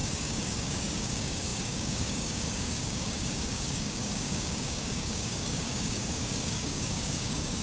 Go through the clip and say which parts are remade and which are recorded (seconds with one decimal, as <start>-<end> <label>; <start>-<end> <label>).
0.0-7.6 remade